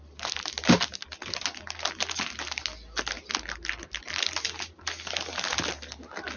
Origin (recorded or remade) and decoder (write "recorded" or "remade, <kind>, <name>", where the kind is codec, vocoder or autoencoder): recorded